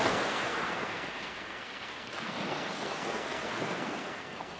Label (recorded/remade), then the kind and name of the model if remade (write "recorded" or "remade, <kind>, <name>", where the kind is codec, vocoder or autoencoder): remade, codec, SNAC